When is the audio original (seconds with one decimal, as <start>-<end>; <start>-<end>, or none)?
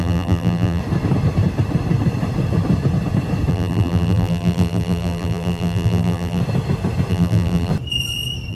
0.8-3.5; 6.4-7.1; 7.7-8.5